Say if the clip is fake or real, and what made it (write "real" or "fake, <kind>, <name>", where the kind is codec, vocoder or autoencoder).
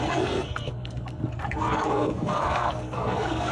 fake, codec, SNAC